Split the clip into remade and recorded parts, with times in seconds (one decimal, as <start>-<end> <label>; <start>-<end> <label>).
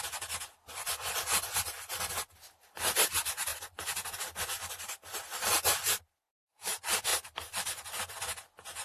0.0-3.5 recorded; 3.5-6.0 remade; 6.0-7.1 recorded; 7.1-8.1 remade; 8.1-8.8 recorded